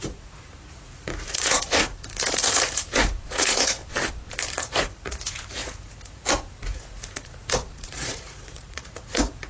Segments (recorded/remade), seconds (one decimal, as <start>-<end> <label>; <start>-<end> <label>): 0.0-3.8 remade; 3.8-4.5 recorded; 4.5-9.5 remade